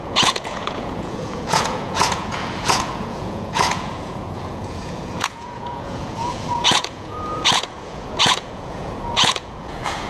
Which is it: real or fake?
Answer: fake